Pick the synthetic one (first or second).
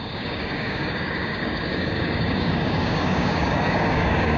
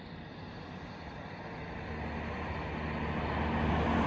first